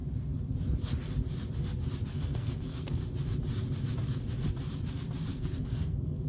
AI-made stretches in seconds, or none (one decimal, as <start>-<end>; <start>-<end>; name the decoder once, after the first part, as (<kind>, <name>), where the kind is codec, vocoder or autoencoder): 2.1-3.0 (codec, SNAC); 5.3-6.3